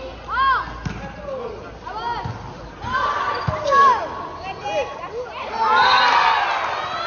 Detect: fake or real real